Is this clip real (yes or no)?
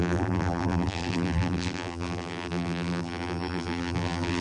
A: no